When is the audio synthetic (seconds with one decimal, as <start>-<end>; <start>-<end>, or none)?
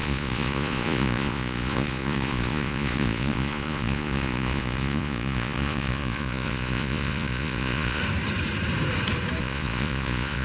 0.0-8.0; 9.4-10.4